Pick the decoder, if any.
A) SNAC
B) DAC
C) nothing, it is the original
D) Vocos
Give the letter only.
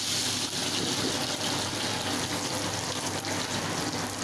C